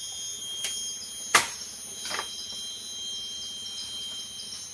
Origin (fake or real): real